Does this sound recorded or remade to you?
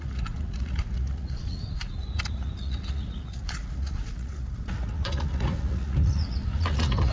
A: remade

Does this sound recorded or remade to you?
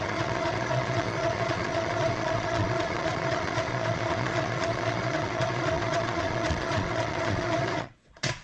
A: remade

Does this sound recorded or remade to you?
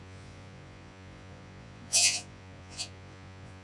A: remade